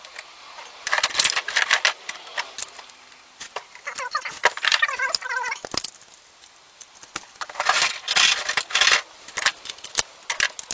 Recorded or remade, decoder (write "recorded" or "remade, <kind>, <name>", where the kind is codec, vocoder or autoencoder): recorded